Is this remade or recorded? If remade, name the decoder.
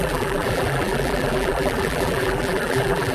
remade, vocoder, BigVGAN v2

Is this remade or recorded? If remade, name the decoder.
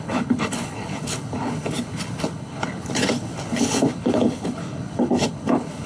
remade, codec, HILCodec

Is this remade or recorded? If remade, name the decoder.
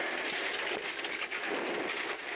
recorded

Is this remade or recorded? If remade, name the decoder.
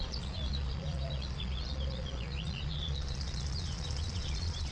remade, vocoder, Vocos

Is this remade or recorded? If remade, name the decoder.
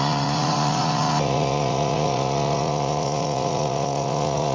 remade, vocoder, Vocos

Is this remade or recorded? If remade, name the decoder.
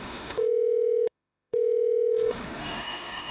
remade, autoencoder, DAC-VAE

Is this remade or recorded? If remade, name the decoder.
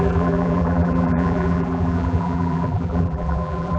remade, vocoder, BigVGAN v2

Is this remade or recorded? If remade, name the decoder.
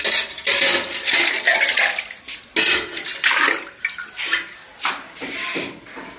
recorded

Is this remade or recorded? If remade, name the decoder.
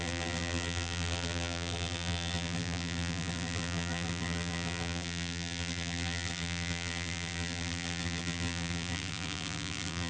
remade, vocoder, BigVGAN v2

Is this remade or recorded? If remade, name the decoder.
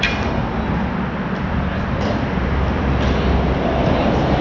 recorded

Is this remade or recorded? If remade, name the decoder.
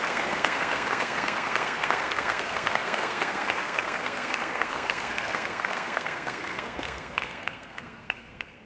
remade, codec, SNAC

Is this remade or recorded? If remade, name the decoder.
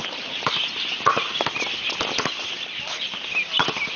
recorded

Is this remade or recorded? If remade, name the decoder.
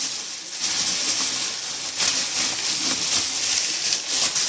recorded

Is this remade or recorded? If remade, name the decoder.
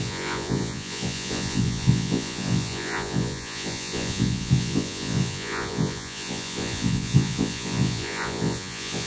remade, vocoder, Vocos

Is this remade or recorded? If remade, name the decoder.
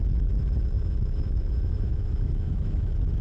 remade, autoencoder, DAC-VAE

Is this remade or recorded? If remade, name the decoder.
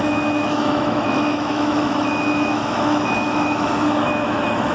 remade, autoencoder, DAC-VAE